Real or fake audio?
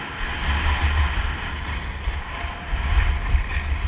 real